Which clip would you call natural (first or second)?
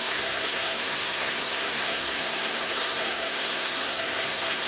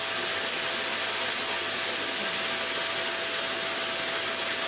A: second